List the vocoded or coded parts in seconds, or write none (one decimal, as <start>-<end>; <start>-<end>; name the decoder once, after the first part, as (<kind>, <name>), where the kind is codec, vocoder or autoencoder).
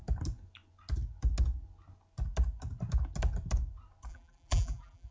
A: 4.1-5.1 (vocoder, BigVGAN v2)